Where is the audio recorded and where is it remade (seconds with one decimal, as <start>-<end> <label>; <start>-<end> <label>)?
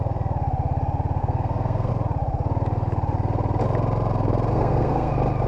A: 0.0-1.2 recorded; 1.2-1.9 remade; 1.9-4.5 recorded; 4.5-5.1 remade; 5.1-5.5 recorded